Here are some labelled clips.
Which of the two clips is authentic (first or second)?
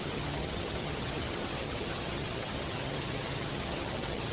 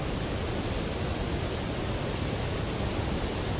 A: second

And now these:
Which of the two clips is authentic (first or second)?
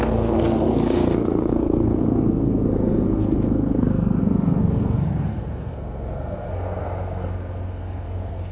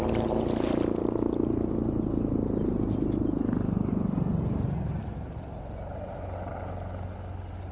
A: second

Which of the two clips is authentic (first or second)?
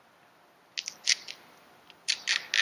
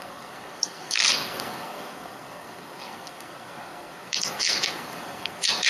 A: first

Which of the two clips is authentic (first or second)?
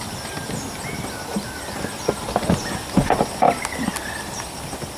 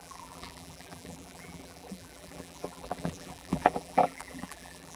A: first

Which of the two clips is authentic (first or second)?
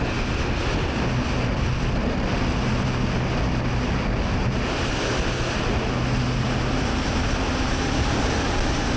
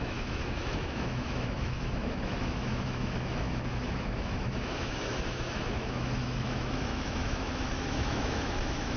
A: first